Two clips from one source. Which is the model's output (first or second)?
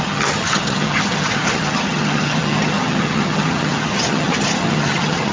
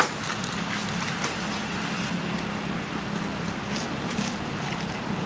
first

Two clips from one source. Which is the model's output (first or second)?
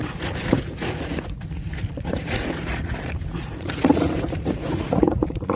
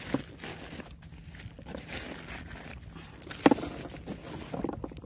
first